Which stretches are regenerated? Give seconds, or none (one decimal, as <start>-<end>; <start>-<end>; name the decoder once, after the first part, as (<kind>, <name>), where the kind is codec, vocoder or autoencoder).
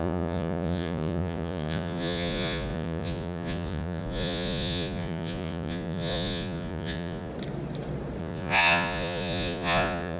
0.0-7.3 (vocoder, Vocos); 8.2-10.2